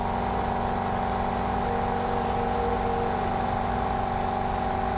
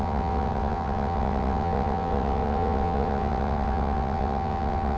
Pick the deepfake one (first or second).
second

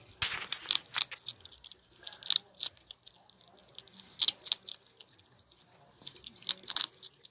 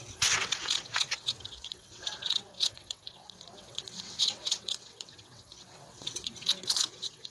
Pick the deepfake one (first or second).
second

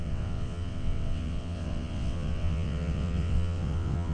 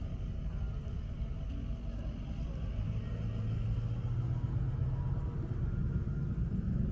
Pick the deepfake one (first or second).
first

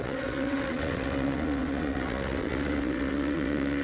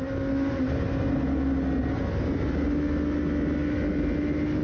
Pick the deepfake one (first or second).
first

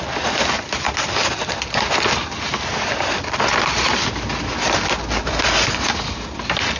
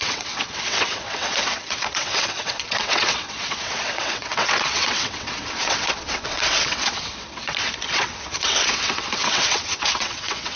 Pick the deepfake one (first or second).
second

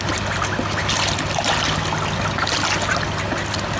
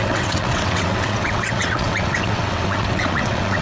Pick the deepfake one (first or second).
second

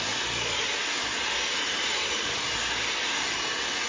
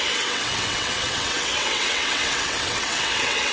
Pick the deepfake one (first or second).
second